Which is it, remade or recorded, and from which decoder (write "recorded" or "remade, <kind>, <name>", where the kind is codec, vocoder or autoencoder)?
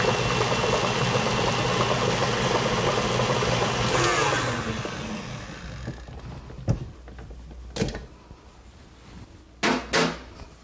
recorded